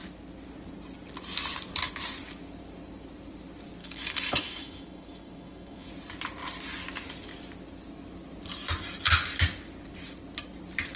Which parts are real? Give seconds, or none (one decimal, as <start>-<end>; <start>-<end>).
0.0-3.8; 5.9-11.0